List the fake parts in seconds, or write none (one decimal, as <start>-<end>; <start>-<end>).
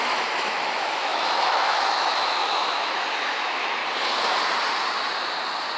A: 0.0-3.8